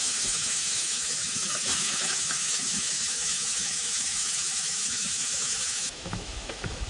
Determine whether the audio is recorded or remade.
remade